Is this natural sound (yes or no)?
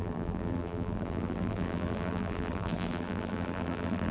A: no